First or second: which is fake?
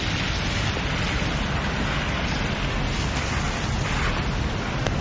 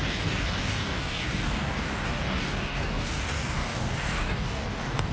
second